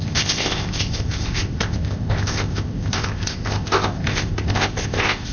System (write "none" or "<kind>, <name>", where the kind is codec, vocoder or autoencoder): codec, ZipCodec